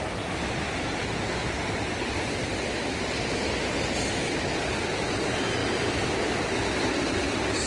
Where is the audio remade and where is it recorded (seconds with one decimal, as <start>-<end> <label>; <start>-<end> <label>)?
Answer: 0.0-7.7 recorded